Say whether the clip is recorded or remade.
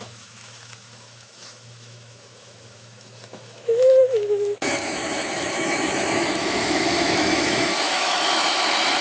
remade